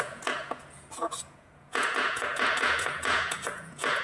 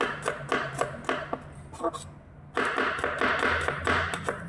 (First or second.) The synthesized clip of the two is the first